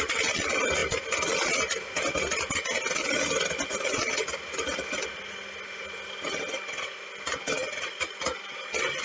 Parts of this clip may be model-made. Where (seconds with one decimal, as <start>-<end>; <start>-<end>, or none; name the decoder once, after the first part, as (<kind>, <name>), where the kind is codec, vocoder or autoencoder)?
none